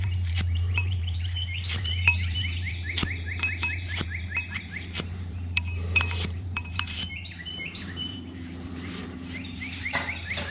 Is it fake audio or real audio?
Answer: fake